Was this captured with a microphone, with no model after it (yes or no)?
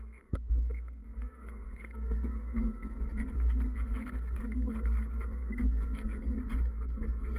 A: no